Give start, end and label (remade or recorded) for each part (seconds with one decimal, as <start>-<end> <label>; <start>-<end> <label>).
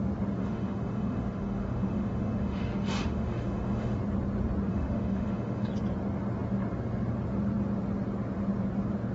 0.0-0.4 recorded; 0.4-4.0 remade; 4.0-4.7 recorded; 4.7-5.7 remade; 5.7-9.1 recorded